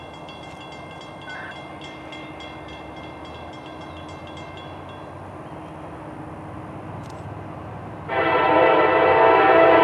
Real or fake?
real